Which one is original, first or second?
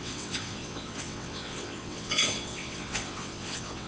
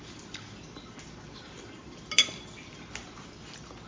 second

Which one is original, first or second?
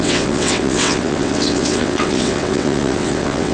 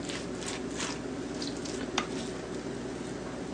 second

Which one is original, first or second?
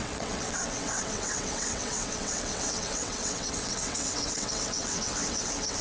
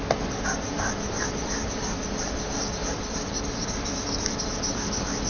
second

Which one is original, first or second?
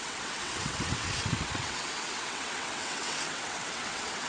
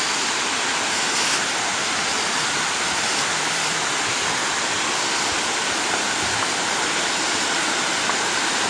second